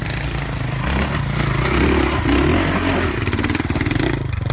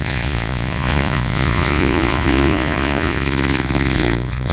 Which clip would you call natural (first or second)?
first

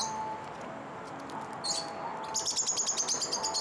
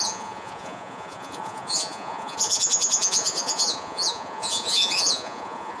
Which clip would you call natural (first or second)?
first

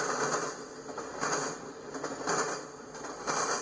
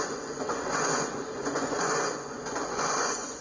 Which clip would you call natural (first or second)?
first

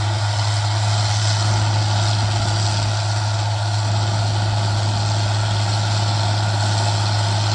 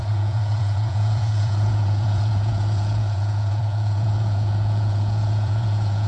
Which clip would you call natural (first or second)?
first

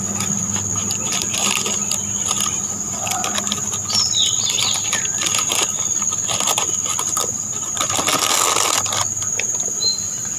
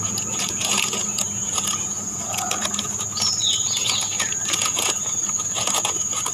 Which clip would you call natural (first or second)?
first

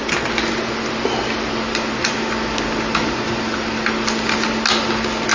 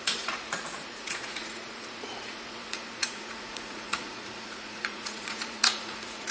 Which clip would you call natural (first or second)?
first